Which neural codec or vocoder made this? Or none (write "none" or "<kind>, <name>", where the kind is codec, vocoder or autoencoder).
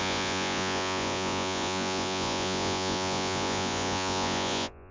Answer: vocoder, Vocos